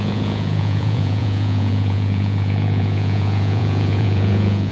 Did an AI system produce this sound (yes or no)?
yes